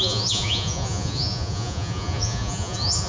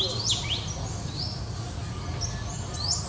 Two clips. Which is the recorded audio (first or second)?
second